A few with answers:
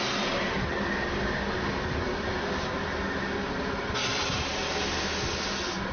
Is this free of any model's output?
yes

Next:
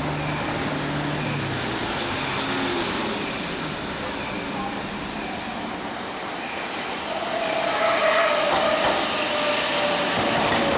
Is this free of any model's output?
yes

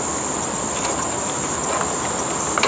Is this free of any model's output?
yes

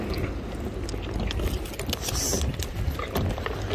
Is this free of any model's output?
yes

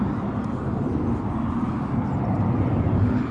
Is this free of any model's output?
yes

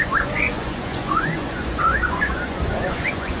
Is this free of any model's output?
no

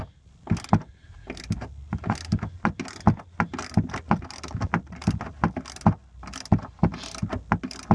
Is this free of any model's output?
yes